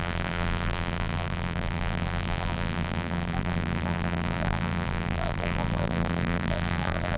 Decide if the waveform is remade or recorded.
remade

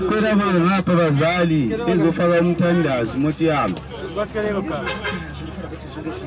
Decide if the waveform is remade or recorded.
recorded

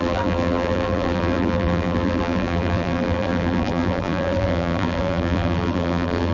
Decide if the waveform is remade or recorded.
remade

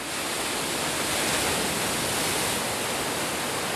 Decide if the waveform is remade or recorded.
recorded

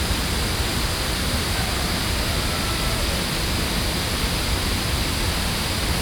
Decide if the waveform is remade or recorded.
recorded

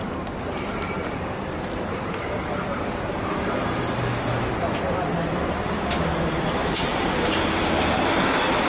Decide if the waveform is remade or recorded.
remade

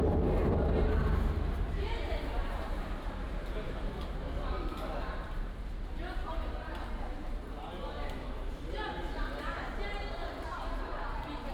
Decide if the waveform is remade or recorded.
remade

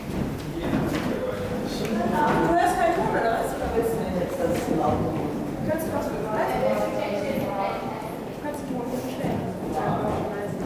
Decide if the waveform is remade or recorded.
remade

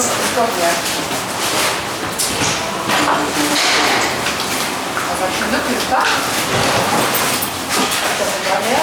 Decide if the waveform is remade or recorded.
recorded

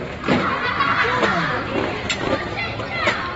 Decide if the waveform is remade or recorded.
recorded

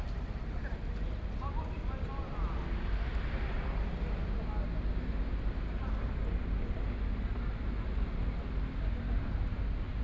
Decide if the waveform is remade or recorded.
recorded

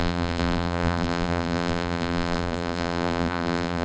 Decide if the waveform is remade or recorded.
remade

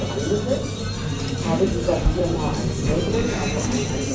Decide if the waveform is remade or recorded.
remade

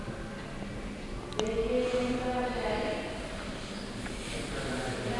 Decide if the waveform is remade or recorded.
recorded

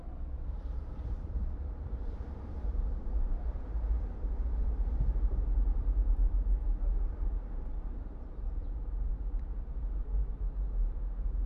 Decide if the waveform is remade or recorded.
remade